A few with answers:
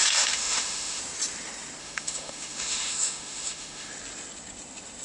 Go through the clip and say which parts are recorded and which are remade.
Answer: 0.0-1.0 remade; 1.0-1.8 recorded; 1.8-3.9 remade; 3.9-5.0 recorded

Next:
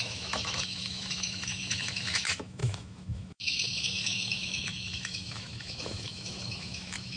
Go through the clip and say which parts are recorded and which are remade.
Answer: 0.0-7.2 remade

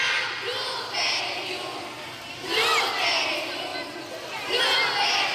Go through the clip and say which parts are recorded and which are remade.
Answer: 0.0-5.3 recorded

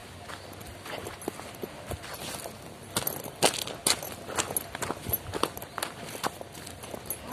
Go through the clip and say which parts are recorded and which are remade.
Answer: 0.0-7.3 recorded